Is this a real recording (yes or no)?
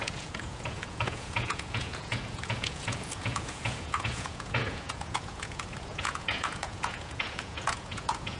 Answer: no